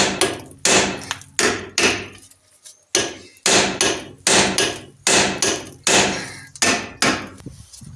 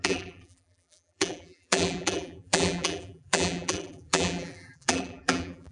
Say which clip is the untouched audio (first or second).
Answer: first